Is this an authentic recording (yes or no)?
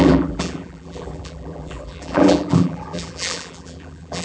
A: no